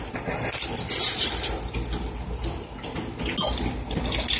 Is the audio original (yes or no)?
yes